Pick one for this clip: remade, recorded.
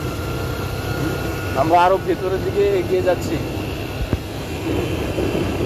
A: recorded